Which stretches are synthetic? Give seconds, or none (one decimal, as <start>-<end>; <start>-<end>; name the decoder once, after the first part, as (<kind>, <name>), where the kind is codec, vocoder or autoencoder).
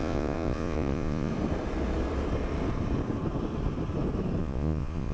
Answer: 0.0-1.3 (vocoder, Vocos); 4.4-5.1